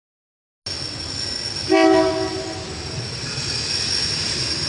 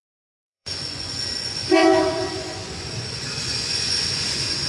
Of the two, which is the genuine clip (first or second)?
first